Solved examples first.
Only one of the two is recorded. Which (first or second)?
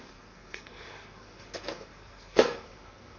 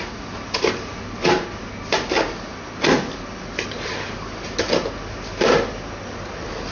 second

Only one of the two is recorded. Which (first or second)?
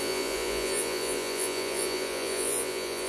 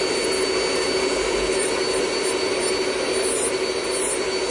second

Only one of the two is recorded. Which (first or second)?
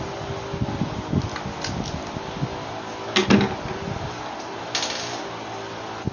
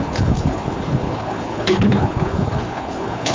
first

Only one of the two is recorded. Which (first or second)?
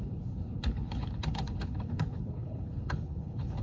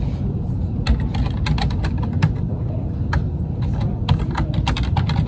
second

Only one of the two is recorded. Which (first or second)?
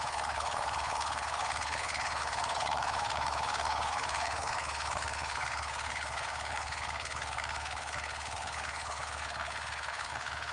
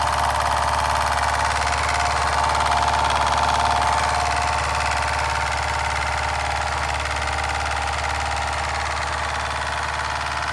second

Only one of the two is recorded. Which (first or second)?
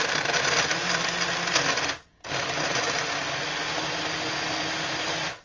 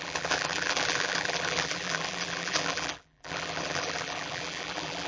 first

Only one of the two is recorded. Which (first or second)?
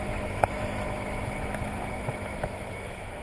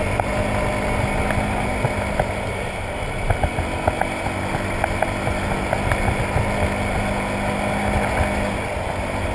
second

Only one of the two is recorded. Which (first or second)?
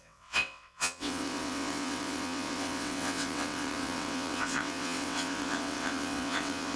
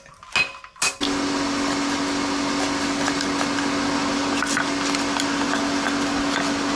second